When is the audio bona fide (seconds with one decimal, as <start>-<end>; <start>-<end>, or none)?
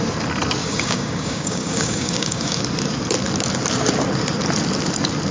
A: 0.0-0.6; 2.6-5.3